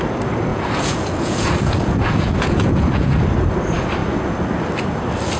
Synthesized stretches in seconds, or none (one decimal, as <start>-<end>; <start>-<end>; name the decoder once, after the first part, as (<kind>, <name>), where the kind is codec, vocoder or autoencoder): 0.5-3.2 (vocoder, Vocos)